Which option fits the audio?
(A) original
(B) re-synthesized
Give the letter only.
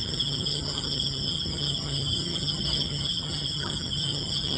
B